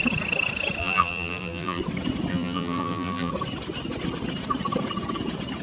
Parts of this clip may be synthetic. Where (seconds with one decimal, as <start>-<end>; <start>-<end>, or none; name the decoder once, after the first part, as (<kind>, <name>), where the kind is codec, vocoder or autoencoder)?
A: 0.8-1.8 (vocoder, BigVGAN v2); 2.3-3.3